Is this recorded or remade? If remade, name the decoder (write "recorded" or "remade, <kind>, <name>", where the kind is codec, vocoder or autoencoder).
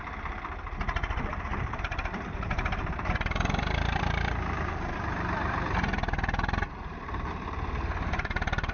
remade, vocoder, BigVGAN v2